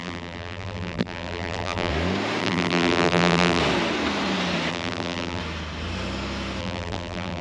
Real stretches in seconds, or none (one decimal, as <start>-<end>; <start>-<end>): 1.9-2.4; 3.6-4.7; 5.4-6.6